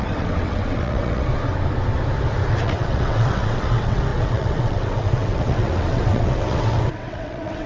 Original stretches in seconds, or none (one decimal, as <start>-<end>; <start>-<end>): 1.3-2.5